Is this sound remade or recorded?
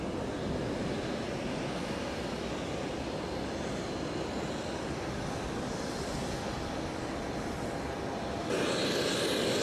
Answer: recorded